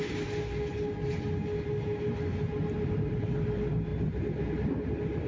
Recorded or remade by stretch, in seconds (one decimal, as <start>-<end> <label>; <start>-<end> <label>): 0.0-3.9 recorded; 3.9-5.3 remade